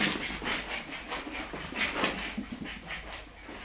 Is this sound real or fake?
real